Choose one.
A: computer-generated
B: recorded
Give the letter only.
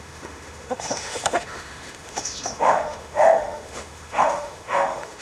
A